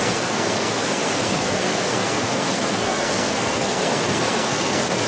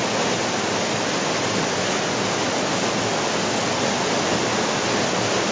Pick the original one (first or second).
second